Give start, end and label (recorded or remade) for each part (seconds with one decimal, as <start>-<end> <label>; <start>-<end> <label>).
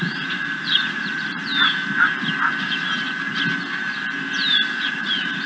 0.0-1.4 remade; 1.4-4.7 recorded; 4.7-5.5 remade